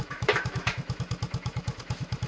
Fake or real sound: fake